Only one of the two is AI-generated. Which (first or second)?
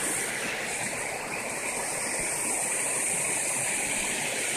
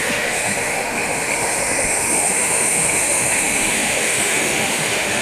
second